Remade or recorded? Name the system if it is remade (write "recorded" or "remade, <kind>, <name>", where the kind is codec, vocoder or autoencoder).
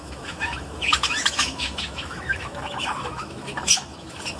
remade, autoencoder, DAC-VAE